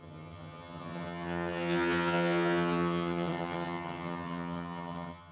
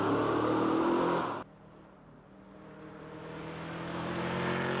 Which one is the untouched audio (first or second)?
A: second